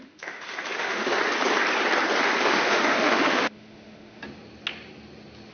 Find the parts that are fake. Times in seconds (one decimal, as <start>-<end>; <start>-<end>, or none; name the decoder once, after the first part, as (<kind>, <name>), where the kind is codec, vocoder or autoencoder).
0.0-1.2 (autoencoder, DAC-VAE); 2.4-4.2